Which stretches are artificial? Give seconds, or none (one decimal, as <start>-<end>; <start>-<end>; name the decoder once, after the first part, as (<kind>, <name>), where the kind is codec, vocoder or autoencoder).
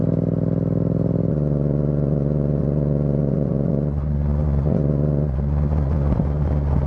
1.3-6.9 (vocoder, Vocos)